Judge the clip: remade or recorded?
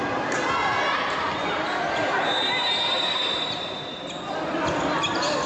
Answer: recorded